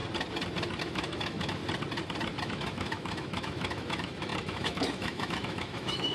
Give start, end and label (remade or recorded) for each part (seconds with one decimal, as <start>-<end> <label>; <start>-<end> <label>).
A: 0.0-0.8 recorded; 0.8-1.6 remade; 1.6-2.4 recorded; 2.4-6.1 remade